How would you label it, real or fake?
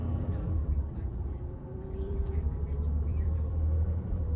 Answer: fake